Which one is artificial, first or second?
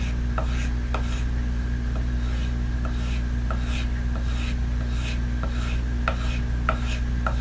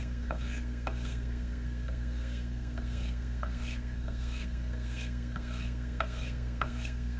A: second